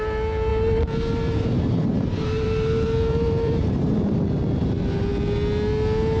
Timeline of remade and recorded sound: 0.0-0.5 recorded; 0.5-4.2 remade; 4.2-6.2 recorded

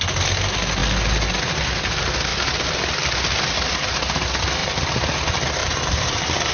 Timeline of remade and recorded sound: 0.0-2.3 recorded; 2.3-3.5 remade; 3.5-4.6 recorded; 4.6-5.1 remade; 5.1-5.6 recorded; 5.6-6.5 remade

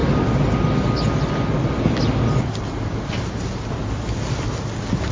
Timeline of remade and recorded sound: 0.0-3.8 recorded; 3.8-4.5 remade; 4.5-5.1 recorded

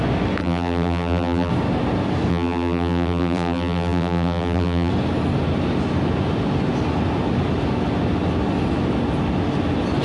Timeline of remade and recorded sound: 0.0-0.4 recorded; 0.4-1.5 remade; 1.5-2.3 recorded; 2.3-4.9 remade; 4.9-10.0 recorded

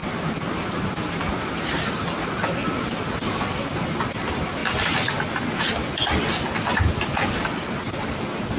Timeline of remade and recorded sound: 0.0-8.6 recorded